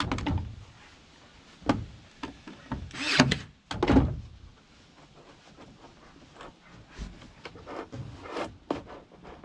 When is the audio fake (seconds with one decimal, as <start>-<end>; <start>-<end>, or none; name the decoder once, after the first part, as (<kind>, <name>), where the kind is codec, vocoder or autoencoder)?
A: none